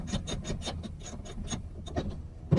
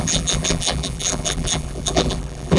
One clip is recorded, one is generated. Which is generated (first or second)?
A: second